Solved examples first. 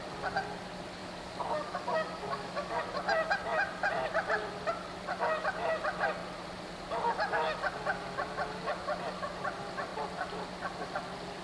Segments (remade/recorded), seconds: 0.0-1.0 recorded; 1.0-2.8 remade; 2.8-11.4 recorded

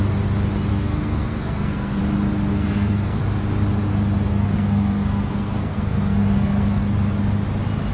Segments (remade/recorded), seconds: 0.0-0.7 recorded; 0.7-2.0 remade; 2.0-2.5 recorded; 2.5-3.2 remade; 3.2-4.3 recorded; 4.3-6.8 remade; 6.8-7.9 recorded

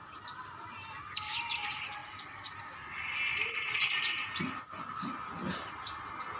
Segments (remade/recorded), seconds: 0.0-6.4 recorded

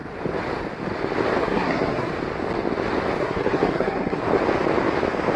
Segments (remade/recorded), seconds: 0.0-1.4 recorded; 1.4-2.1 remade; 2.1-3.2 recorded; 3.2-4.2 remade; 4.2-5.4 recorded

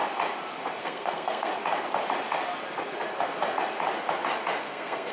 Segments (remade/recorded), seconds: 0.0-0.8 recorded; 0.8-1.5 remade; 1.5-4.6 recorded; 4.6-5.1 remade